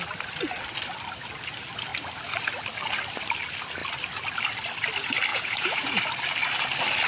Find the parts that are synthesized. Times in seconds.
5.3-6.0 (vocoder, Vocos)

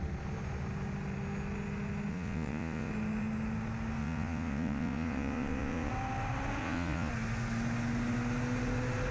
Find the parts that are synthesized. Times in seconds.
2.1-2.9 (vocoder, Vocos); 4.0-5.9; 6.6-7.1

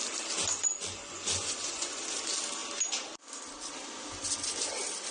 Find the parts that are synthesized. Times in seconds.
0.7-2.0 (vocoder, Vocos)

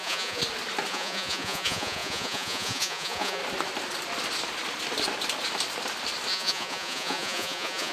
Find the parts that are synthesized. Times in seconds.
0.0-0.4 (vocoder, Vocos); 0.9-3.4; 6.3-7.9

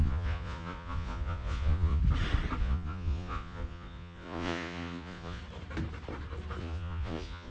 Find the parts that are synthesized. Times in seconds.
0.0-2.0 (vocoder, Vocos); 2.6-5.4; 6.6-7.5

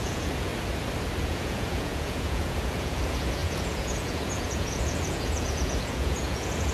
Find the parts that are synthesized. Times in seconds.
0.0-0.5 (vocoder, Vocos); 1.2-6.7